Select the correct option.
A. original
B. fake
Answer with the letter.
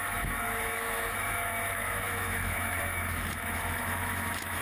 B